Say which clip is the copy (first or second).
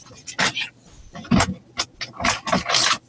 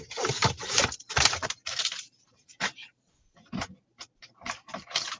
second